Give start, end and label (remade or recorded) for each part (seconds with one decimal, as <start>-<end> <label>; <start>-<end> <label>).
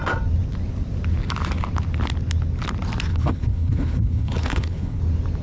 0.0-3.1 recorded; 3.1-5.0 remade; 5.0-5.4 recorded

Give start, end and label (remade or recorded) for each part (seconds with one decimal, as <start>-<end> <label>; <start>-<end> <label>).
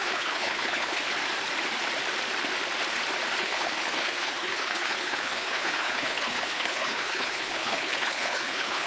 0.0-1.0 remade; 1.0-3.4 recorded; 3.4-8.9 remade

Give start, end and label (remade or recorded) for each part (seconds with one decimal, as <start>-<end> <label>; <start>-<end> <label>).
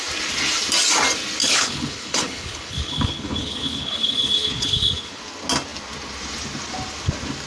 0.0-1.4 recorded; 1.4-5.2 remade; 5.2-7.5 recorded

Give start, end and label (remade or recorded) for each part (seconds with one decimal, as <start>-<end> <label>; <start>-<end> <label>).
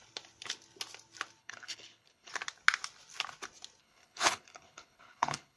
0.0-1.4 recorded; 1.4-2.3 remade; 2.3-3.8 recorded; 3.8-5.6 remade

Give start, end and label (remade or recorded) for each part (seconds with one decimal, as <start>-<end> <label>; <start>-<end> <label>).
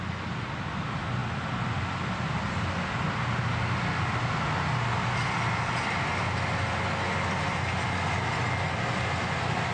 0.0-9.7 recorded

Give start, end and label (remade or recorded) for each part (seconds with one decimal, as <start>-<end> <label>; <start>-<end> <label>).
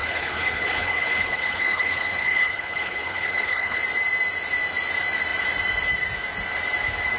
0.0-3.8 remade; 3.8-7.2 recorded